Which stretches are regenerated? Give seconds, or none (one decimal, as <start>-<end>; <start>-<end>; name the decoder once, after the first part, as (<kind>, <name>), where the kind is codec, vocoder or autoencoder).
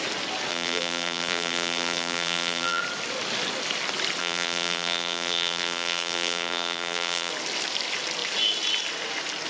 0.5-2.8 (vocoder, BigVGAN v2); 4.2-7.3